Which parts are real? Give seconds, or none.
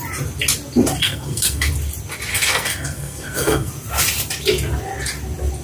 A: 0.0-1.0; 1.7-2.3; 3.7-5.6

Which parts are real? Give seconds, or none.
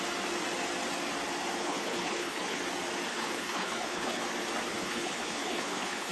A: 0.0-1.6; 2.6-3.1; 4.2-4.8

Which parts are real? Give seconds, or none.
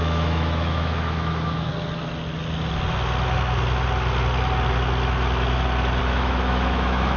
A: 1.7-6.0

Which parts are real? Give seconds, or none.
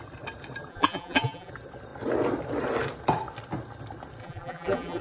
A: 0.0-0.7; 1.5-4.2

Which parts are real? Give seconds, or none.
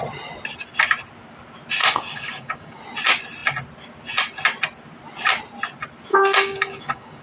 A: 0.0-1.8; 2.8-6.1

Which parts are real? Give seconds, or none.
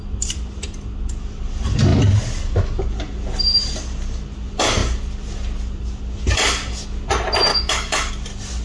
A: 0.0-7.5; 8.1-8.6